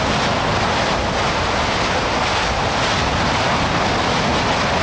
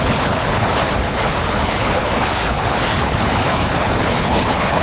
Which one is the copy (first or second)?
second